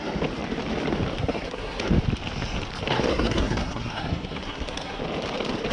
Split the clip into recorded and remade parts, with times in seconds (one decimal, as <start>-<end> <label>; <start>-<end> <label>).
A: 0.0-1.2 recorded; 1.2-1.8 remade; 1.8-3.1 recorded; 3.1-5.0 remade; 5.0-5.7 recorded